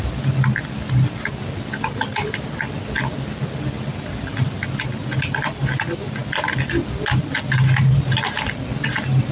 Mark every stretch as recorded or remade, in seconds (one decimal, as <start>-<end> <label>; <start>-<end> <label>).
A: 0.0-9.3 recorded